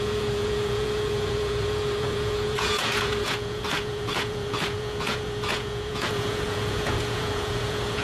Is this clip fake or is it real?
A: fake